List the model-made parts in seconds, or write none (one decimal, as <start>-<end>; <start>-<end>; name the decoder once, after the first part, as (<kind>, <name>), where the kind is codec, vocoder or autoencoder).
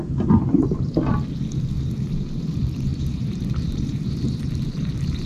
2.9-4.5 (vocoder, BigVGAN v2)